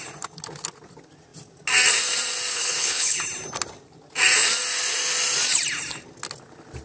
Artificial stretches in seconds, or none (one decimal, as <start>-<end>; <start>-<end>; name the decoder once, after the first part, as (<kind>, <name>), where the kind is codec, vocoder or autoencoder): 2.5-3.2 (codec, HILCodec)

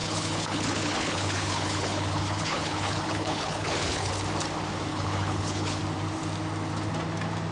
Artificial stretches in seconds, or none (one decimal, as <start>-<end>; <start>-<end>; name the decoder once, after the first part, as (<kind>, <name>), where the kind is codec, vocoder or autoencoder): 0.0-4.1 (codec, HILCodec); 4.9-5.8

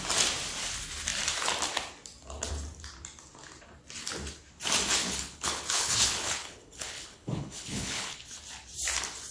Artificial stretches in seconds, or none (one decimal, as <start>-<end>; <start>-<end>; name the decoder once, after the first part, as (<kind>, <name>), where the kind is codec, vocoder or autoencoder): 5.0-8.4 (codec, HILCodec)

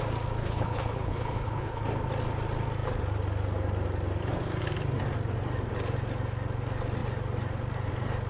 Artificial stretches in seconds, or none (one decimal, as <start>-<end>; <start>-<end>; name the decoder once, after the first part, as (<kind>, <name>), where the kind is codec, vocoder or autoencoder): 0.4-1.8 (codec, HILCodec)

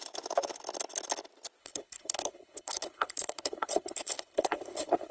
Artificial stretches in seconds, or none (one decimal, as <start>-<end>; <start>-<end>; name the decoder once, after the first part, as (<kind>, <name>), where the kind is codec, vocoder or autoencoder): 1.6-5.1 (codec, HILCodec)

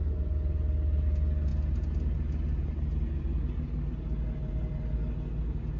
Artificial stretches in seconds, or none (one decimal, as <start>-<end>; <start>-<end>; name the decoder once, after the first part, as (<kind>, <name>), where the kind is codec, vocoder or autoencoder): none

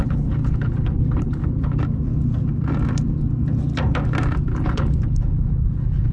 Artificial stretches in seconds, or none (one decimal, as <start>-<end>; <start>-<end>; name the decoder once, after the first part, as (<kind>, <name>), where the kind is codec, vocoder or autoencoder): 0.0-1.8 (codec, HILCodec); 4.5-6.1